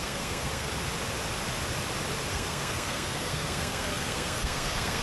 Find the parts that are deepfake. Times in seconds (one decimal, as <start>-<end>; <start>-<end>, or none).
0.0-0.7; 2.3-5.0